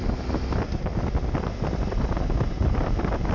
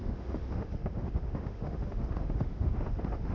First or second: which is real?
first